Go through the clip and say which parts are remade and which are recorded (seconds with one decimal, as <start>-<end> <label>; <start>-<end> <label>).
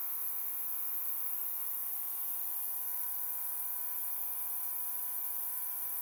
0.0-6.0 recorded